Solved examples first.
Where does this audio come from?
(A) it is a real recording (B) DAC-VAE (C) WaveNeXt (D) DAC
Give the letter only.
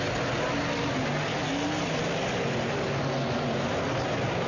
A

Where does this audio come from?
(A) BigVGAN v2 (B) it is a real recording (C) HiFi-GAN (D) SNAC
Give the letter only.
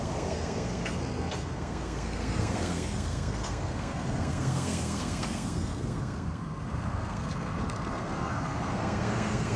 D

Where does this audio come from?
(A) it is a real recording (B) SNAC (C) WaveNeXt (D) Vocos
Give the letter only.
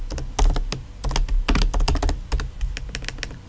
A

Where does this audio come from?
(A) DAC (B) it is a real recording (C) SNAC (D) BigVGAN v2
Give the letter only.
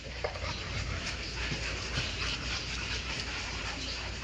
D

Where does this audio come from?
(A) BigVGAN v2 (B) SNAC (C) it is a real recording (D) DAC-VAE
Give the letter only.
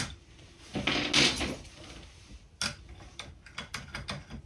C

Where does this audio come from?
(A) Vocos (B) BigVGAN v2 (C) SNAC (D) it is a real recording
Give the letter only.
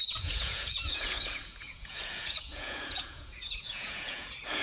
A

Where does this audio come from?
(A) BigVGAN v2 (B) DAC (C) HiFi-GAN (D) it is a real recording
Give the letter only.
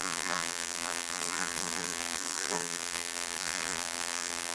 A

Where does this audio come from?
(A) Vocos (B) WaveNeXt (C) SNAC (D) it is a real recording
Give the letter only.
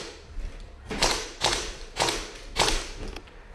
D